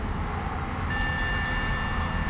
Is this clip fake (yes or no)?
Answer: no